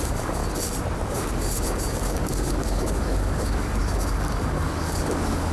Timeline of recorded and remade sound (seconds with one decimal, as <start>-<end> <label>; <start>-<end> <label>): 0.0-0.4 remade; 0.4-1.1 recorded; 1.1-5.5 remade